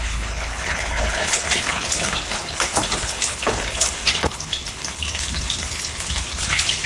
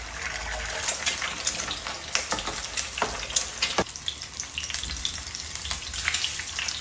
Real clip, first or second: second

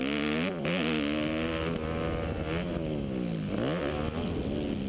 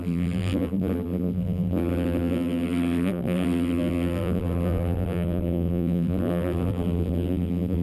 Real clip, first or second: first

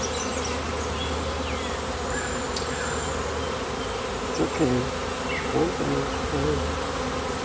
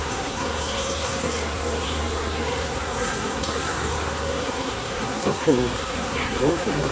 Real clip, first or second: first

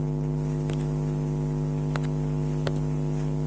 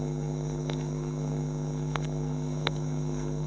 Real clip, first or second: first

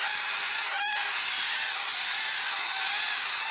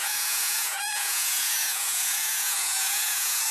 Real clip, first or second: first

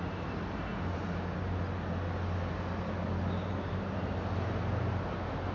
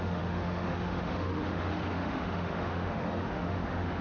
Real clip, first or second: first